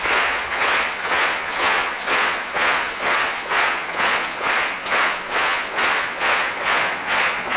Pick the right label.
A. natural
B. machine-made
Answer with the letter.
B